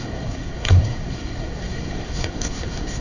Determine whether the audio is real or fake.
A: fake